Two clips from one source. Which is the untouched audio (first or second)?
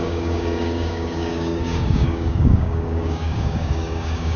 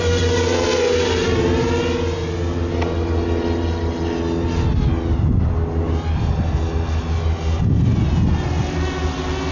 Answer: second